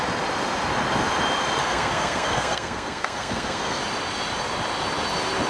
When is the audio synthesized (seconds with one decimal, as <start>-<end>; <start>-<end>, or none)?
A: 1.6-3.8